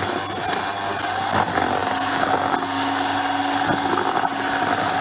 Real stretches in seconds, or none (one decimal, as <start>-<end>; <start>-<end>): 0.0-5.0